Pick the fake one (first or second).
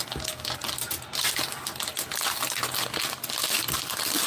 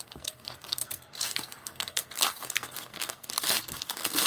second